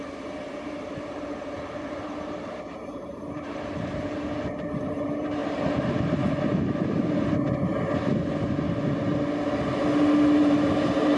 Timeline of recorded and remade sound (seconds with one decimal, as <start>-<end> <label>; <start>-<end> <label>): 0.0-7.7 remade; 7.7-10.4 recorded; 10.4-11.2 remade